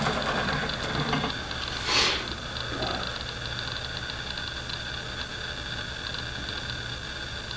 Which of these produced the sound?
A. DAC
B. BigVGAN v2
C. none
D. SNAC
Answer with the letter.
C